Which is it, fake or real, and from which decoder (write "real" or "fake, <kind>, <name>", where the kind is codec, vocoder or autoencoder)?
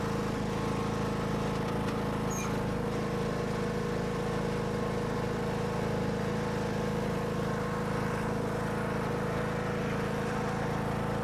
real